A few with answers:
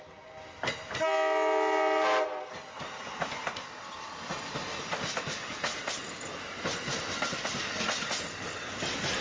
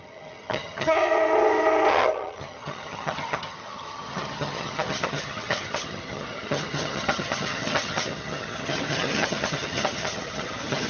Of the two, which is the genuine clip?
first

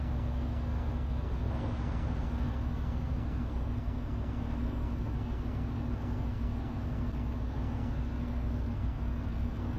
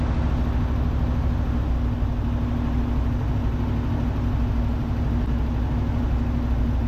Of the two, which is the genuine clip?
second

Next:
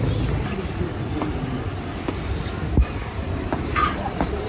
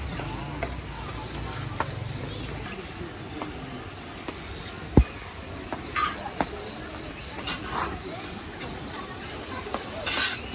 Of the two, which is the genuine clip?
second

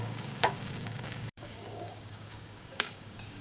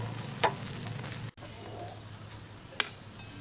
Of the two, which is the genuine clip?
second